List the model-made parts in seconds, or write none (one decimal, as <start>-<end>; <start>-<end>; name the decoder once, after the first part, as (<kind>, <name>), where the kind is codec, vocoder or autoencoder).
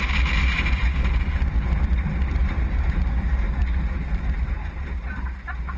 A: none